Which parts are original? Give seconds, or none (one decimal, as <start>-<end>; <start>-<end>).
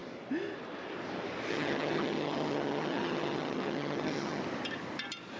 0.0-1.5; 4.4-5.4